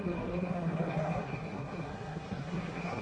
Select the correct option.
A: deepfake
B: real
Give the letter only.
A